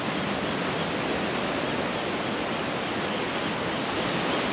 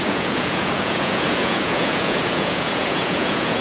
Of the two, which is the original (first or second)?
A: first